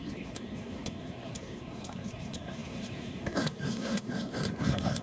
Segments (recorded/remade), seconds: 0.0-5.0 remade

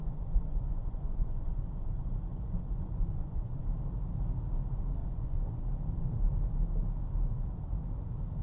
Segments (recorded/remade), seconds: 0.0-3.6 remade; 3.6-5.0 recorded; 5.0-5.6 remade; 5.6-8.4 recorded

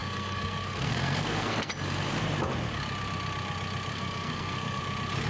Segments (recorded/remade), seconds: 0.0-1.7 remade; 1.7-3.9 recorded; 3.9-4.8 remade; 4.8-5.3 recorded

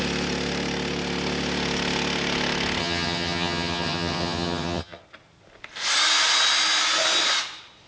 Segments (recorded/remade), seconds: 0.0-2.8 recorded; 2.8-5.0 remade; 5.0-7.9 recorded

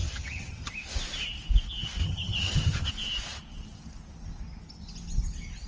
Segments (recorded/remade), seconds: 0.0-0.7 remade; 0.7-2.0 recorded; 2.0-2.9 remade; 2.9-5.7 recorded

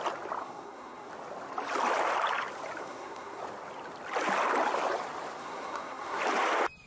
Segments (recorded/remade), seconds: 0.0-0.4 recorded; 0.4-1.1 remade; 1.1-2.8 recorded; 2.8-3.4 remade; 3.4-5.4 recorded; 5.4-6.2 remade; 6.2-6.9 recorded